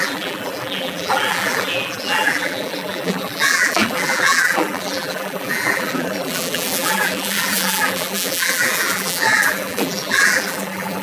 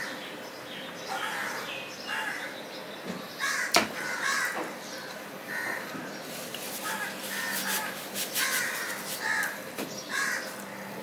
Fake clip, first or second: first